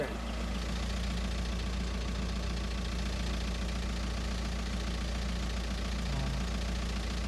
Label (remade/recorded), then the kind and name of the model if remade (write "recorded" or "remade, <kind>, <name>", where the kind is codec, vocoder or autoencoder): recorded